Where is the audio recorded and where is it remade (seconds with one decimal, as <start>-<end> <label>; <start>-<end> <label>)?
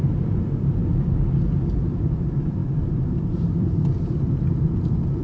0.0-0.8 remade; 0.8-1.9 recorded; 1.9-5.2 remade